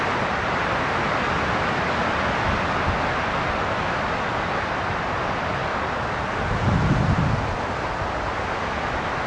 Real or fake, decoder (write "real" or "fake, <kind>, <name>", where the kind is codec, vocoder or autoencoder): real